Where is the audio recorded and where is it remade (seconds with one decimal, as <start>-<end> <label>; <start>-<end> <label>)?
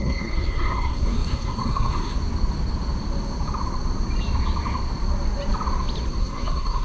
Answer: 0.0-2.1 remade; 2.1-6.2 recorded; 6.2-6.8 remade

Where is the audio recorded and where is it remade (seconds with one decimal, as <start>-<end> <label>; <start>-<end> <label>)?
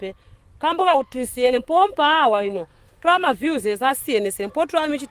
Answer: 0.0-0.8 recorded; 0.8-3.9 remade; 3.9-5.1 recorded